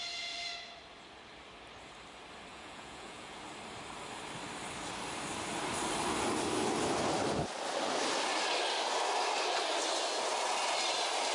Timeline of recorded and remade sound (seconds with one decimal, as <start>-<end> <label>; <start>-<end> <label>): 0.0-2.5 recorded; 2.5-3.4 remade; 3.4-11.3 recorded